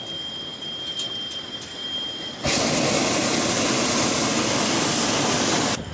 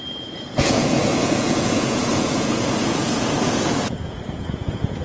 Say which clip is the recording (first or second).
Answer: first